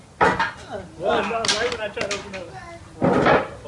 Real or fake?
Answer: real